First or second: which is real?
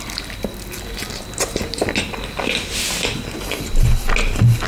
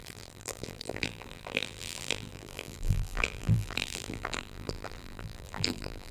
first